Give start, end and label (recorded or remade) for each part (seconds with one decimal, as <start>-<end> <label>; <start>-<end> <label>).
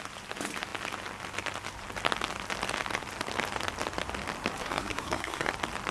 0.0-4.6 recorded; 4.6-5.5 remade; 5.5-5.9 recorded